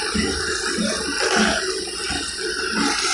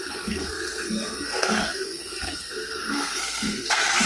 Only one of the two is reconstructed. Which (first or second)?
second